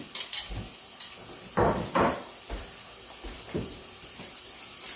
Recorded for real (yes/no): yes